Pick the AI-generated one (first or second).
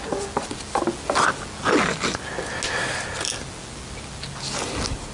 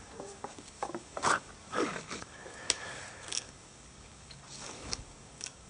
second